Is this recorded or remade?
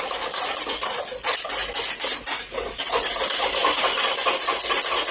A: recorded